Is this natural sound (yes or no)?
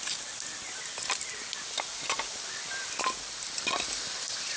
yes